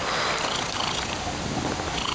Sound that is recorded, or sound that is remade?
recorded